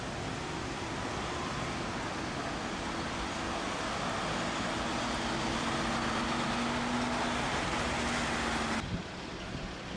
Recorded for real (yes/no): yes